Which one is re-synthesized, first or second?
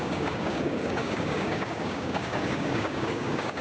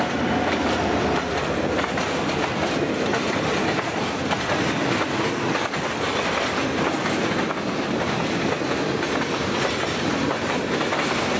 first